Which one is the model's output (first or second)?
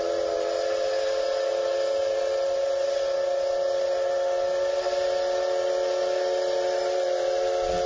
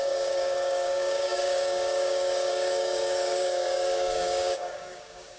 second